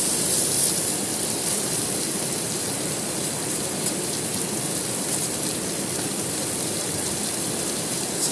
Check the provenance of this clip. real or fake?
fake